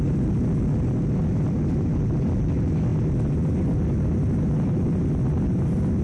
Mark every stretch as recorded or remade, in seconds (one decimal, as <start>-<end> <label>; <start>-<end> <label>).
0.0-6.0 recorded